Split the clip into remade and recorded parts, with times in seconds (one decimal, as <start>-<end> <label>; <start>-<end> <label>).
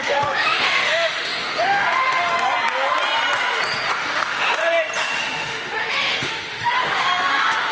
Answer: 0.0-2.3 remade; 2.3-3.9 recorded; 3.9-4.6 remade; 4.6-5.2 recorded; 5.2-7.7 remade